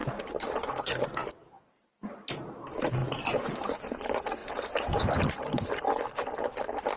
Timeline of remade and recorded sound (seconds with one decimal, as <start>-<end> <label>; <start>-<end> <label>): 0.0-0.7 remade; 0.7-4.4 recorded; 4.4-6.3 remade; 6.3-7.0 recorded